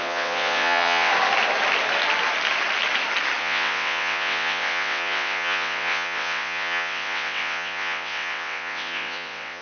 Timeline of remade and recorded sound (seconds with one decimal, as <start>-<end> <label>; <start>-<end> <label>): 0.0-1.1 remade; 1.1-3.4 recorded; 3.4-9.6 remade